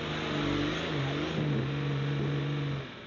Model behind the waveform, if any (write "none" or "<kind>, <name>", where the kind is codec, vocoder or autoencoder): none